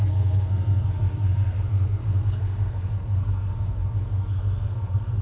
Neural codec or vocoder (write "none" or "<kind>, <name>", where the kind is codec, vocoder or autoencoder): codec, SNAC